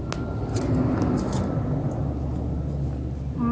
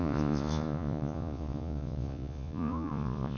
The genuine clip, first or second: first